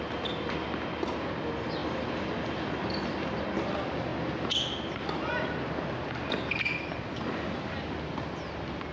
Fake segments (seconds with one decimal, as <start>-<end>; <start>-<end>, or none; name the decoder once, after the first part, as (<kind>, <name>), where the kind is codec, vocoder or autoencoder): none